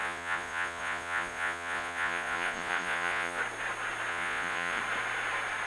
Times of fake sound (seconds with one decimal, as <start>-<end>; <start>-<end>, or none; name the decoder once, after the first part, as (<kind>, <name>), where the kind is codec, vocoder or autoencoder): 0.0-3.4 (vocoder, Vocos); 4.1-4.8

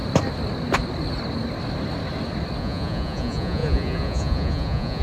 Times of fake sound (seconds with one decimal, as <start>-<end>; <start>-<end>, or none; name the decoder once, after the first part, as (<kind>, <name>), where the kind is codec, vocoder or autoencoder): 2.6-5.0 (vocoder, Vocos)

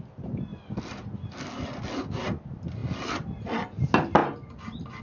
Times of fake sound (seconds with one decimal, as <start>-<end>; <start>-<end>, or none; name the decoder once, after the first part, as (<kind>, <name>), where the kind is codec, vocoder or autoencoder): none

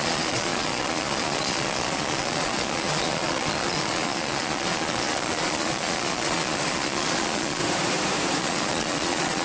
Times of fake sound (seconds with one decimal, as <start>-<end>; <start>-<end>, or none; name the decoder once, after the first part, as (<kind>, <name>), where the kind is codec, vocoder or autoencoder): 0.0-7.6 (vocoder, Vocos); 8.4-9.4

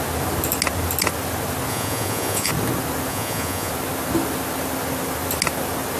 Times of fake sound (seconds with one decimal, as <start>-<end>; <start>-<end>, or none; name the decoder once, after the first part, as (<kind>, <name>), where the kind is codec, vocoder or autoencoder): 1.7-2.5 (vocoder, Vocos); 3.1-3.7